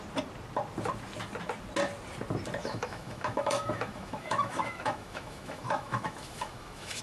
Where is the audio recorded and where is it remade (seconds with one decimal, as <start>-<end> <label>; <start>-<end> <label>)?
0.0-2.6 recorded; 2.6-7.0 remade